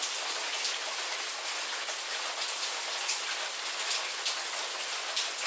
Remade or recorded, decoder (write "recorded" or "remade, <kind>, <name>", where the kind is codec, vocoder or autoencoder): recorded